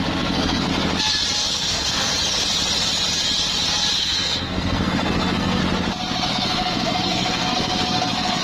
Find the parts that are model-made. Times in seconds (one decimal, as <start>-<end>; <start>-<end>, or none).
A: 0.0-0.7; 1.5-2.1; 4.0-5.6; 6.3-8.4

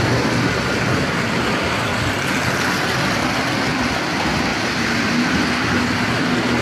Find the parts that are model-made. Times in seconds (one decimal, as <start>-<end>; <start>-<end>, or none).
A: none

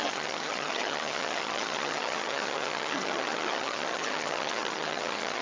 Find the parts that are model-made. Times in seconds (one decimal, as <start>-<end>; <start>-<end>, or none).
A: 0.0-5.4

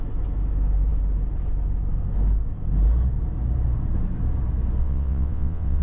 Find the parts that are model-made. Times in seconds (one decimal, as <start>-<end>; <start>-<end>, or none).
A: 4.8-5.8

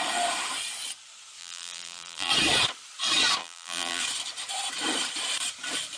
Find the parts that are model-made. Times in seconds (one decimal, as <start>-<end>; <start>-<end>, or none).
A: 1.4-2.3; 3.4-4.0

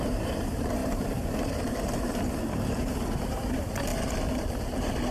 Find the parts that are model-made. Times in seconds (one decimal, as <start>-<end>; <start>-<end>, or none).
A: 0.0-3.9; 4.6-5.1

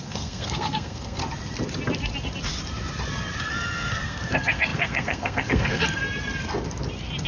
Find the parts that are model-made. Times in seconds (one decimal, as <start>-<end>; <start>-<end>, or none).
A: 0.0-1.2; 3.4-6.0